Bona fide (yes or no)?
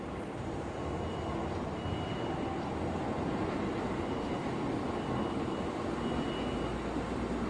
yes